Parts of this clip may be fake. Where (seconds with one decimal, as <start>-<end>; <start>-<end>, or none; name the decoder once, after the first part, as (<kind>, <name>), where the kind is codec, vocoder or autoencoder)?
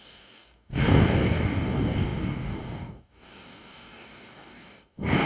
0.0-5.3 (codec, DAC)